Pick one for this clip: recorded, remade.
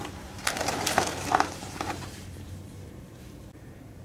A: remade